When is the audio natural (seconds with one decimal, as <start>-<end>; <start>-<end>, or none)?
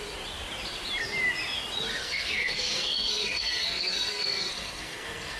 0.0-1.9